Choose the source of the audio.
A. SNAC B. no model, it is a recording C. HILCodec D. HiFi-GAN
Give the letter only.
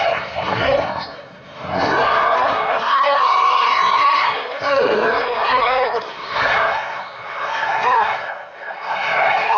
A